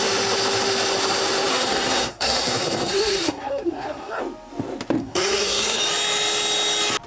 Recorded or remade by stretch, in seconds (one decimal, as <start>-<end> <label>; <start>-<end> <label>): 0.0-1.5 recorded; 1.5-4.2 remade; 4.2-5.0 recorded; 5.0-5.8 remade; 5.8-7.1 recorded